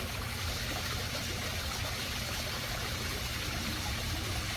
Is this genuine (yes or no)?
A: yes